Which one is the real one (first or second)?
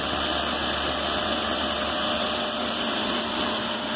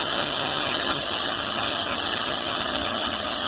first